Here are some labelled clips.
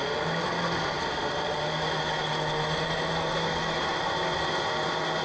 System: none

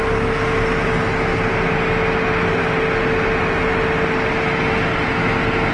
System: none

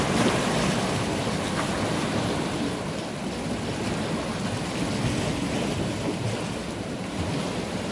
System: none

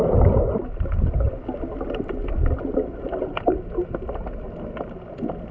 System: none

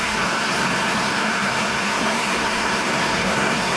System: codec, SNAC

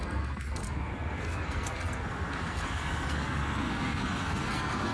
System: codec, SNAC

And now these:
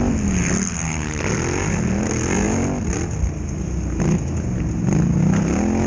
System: none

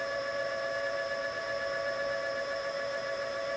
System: none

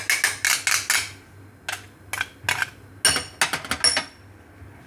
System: none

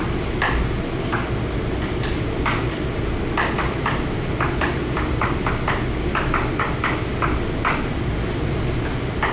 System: none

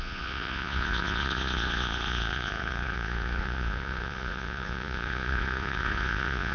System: vocoder, Vocos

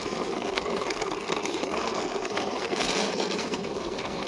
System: codec, SNAC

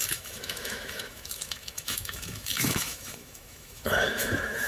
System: autoencoder, DAC-VAE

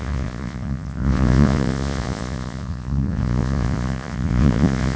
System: vocoder, Vocos